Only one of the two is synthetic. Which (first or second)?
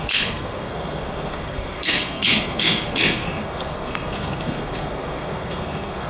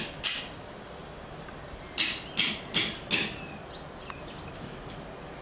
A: first